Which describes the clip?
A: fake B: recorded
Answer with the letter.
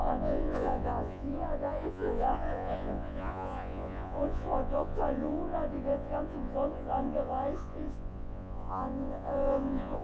A